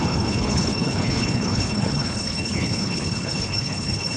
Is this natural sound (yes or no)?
no